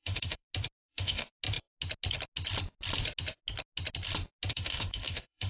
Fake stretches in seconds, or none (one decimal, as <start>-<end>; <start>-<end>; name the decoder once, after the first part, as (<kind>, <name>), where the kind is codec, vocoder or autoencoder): 0.0-0.4 (autoencoder, DAC-VAE); 0.9-1.3; 4.5-5.5